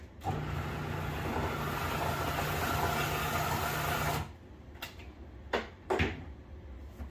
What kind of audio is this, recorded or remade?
recorded